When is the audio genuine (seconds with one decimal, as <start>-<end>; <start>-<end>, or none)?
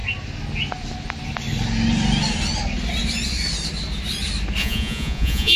0.0-4.6